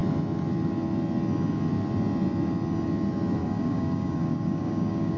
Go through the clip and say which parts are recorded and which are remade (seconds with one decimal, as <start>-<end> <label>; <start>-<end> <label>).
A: 0.0-3.4 recorded; 3.4-5.2 remade